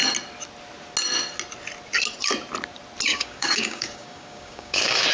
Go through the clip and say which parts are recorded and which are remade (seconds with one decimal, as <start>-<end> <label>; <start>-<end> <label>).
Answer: 0.0-3.1 recorded; 3.1-5.1 remade